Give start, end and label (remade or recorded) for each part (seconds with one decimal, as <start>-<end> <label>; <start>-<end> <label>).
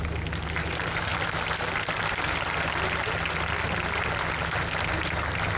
0.0-5.6 recorded